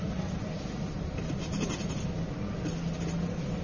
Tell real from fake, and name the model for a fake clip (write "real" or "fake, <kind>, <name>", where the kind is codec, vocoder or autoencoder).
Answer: real